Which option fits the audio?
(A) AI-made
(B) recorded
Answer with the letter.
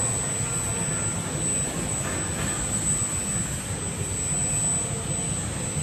B